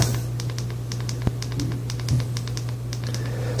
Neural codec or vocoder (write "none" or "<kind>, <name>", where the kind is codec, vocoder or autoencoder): vocoder, BigVGAN v2